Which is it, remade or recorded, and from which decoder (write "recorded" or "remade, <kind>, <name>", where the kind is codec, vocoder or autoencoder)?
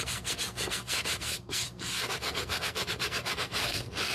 remade, codec, SNAC